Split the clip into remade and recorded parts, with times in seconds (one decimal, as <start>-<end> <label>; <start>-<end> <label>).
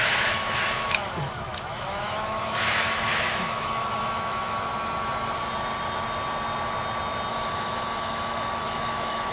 0.0-4.7 remade; 4.7-7.3 recorded; 7.3-9.3 remade